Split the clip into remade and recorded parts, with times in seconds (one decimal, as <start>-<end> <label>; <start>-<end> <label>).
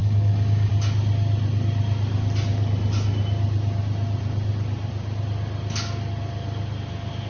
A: 0.0-0.7 remade; 0.7-7.3 recorded